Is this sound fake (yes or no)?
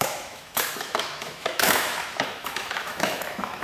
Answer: yes